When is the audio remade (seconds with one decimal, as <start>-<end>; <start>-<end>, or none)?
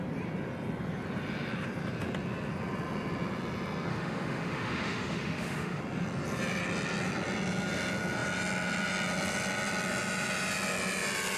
3.9-5.8